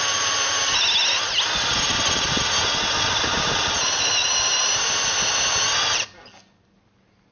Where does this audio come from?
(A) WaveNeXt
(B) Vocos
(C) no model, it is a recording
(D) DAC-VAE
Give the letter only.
C